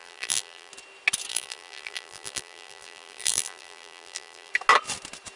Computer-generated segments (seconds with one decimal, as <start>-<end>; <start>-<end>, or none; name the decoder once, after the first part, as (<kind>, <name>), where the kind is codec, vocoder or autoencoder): 0.0-0.7 (vocoder, BigVGAN v2); 1.3-4.5